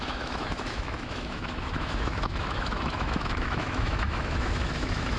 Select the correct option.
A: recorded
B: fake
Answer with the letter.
B